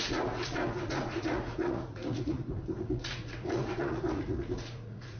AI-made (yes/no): yes